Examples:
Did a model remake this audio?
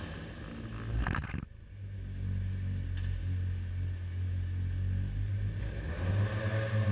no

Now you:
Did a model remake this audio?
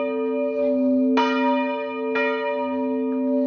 no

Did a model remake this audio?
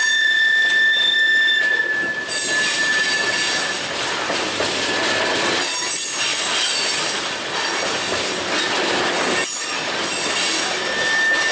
no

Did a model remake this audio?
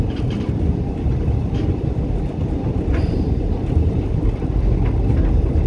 no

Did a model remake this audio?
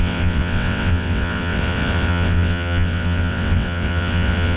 yes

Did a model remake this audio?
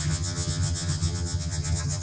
yes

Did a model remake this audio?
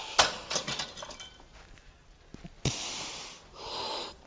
no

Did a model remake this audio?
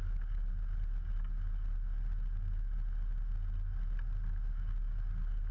no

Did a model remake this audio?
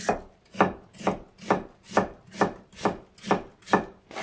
no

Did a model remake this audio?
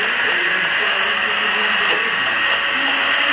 no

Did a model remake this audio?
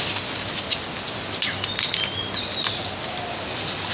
no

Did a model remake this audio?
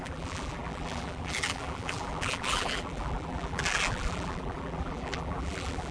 yes